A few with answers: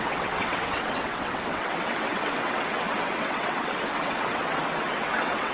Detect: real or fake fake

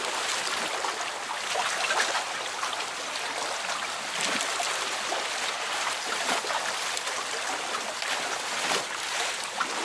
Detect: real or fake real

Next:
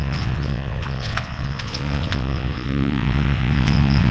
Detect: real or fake fake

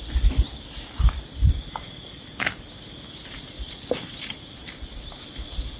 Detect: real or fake real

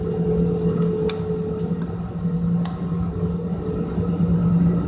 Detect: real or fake real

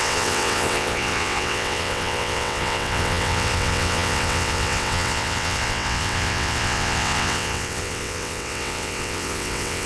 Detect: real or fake fake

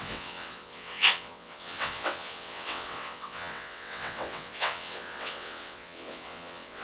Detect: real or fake fake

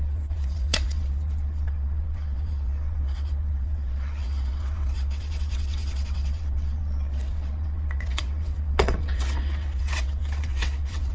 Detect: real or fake fake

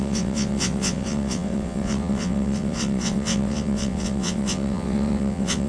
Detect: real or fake fake